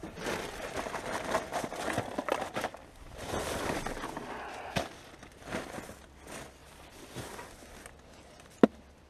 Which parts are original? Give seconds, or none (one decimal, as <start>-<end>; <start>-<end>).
0.0-9.1